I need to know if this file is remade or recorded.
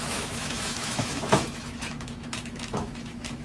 remade